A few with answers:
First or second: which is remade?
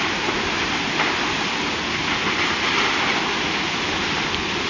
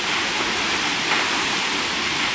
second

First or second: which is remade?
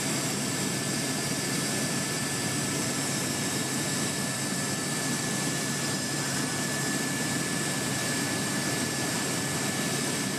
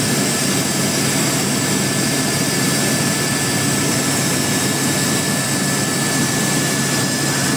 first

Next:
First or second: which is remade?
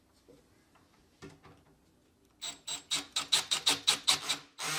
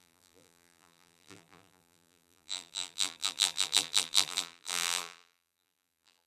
second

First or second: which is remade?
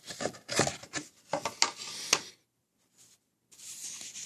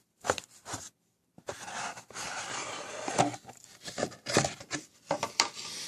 second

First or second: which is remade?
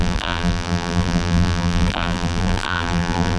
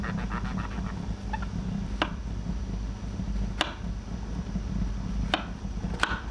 first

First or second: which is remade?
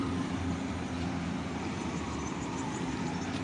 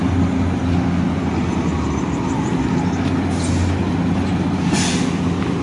first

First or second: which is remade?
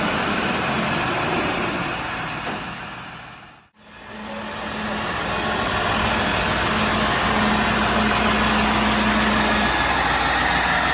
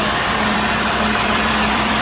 second